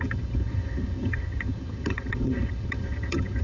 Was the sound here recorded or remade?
remade